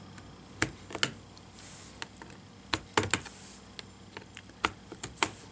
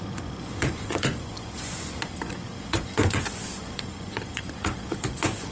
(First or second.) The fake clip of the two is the second